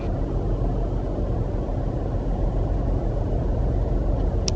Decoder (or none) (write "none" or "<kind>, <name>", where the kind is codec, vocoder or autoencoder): none